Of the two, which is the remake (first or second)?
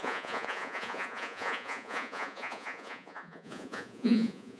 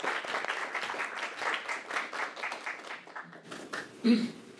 first